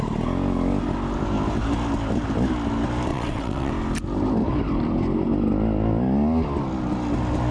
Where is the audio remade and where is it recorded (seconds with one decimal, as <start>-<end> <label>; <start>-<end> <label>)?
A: 0.0-3.1 recorded; 3.1-3.7 remade; 3.7-7.5 recorded